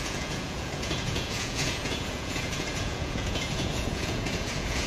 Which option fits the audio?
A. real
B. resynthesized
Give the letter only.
B